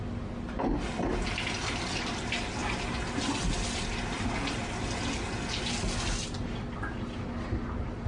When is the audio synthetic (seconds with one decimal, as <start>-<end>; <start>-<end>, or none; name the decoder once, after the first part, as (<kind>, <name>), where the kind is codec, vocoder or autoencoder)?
none